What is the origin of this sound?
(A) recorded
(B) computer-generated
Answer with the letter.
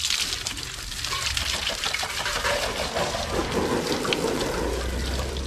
A